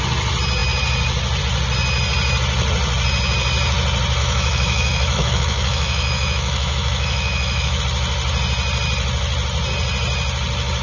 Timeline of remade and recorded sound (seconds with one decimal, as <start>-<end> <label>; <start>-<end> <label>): 0.0-4.2 recorded; 4.2-7.8 remade; 7.8-10.8 recorded